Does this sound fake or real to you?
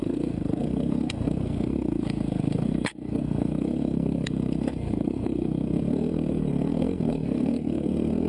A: fake